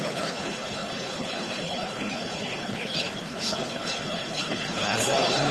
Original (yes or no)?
no